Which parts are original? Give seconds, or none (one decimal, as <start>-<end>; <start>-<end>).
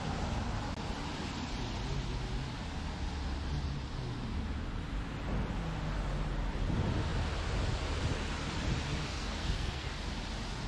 0.0-9.1; 9.9-10.7